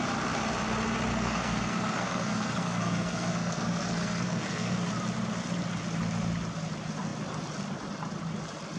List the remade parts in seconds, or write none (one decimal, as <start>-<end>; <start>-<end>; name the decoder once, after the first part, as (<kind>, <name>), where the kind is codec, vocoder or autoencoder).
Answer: 1.1-4.8 (codec, SNAC)